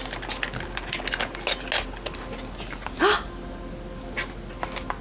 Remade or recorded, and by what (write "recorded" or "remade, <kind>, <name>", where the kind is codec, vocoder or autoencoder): recorded